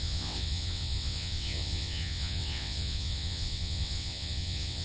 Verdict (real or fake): fake